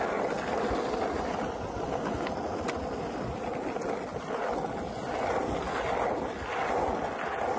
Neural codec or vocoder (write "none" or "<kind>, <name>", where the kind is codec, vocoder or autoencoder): none